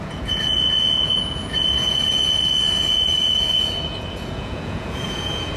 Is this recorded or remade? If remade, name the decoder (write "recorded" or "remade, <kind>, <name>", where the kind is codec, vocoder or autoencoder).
remade, vocoder, Vocos